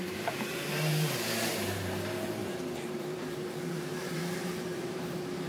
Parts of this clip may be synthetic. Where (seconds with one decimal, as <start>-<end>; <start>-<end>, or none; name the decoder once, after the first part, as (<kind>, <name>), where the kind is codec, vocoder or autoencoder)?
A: 0.0-5.5 (vocoder, BigVGAN v2)